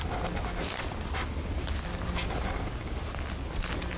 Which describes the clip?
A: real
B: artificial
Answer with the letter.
A